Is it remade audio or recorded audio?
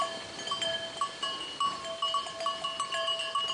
recorded